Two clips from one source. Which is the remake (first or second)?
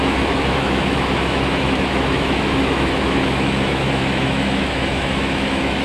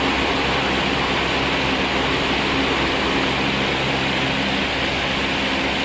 first